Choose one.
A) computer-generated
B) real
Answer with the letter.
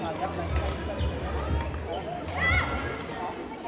B